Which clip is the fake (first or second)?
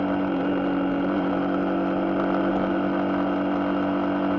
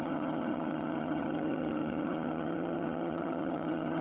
second